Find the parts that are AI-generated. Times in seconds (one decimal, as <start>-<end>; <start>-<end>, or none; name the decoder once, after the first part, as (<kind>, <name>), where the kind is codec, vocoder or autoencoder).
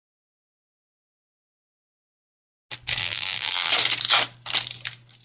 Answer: 3.0-3.7 (vocoder, BigVGAN v2)